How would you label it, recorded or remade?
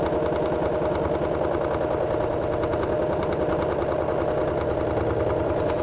recorded